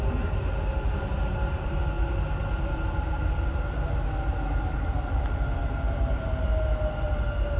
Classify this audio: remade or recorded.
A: recorded